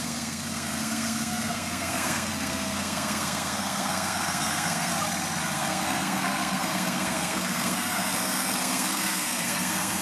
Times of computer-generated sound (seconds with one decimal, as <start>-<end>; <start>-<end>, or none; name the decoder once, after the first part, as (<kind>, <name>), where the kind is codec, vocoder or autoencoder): 0.0-4.9 (codec, SNAC); 5.4-10.0